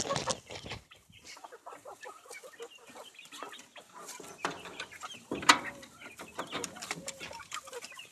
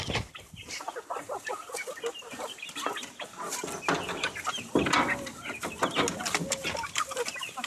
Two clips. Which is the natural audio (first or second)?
second